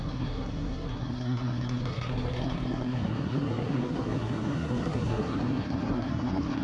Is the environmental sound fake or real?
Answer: fake